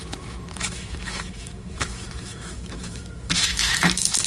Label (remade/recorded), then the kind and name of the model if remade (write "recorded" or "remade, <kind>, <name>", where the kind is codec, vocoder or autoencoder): remade, autoencoder, DAC-VAE